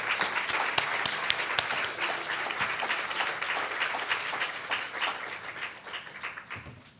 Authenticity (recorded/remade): recorded